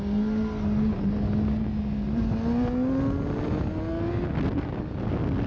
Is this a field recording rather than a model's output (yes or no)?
yes